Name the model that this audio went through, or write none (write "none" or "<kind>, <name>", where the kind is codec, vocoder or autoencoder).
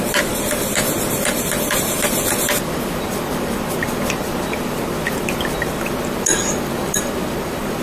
vocoder, BigVGAN v2